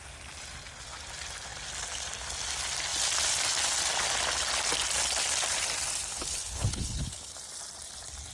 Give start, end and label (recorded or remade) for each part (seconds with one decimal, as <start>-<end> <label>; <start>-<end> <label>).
0.0-6.1 recorded; 6.1-7.4 remade; 7.4-8.3 recorded

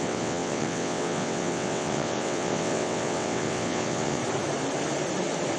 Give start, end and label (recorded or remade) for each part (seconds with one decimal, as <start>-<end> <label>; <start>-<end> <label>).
0.0-4.2 remade; 4.2-5.6 recorded

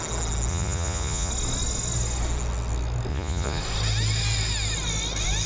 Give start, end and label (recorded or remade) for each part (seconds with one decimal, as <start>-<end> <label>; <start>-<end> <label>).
0.0-0.5 recorded; 0.5-1.3 remade; 1.3-3.1 recorded; 3.1-3.6 remade; 3.6-5.5 recorded

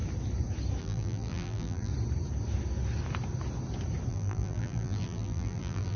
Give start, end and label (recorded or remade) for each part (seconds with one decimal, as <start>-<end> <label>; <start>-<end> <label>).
0.0-0.8 recorded; 0.8-1.9 remade; 1.9-4.1 recorded; 4.1-6.0 remade

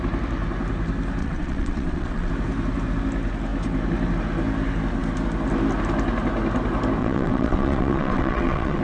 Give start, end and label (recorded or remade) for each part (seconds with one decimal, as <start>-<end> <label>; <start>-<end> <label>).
0.0-1.2 recorded; 1.2-2.3 remade; 2.3-7.0 recorded; 7.0-8.8 remade